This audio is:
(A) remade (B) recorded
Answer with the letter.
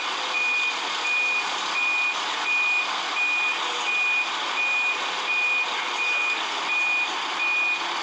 B